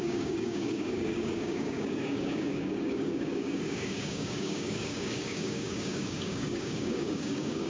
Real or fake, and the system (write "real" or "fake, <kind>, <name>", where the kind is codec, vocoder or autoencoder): fake, codec, DAC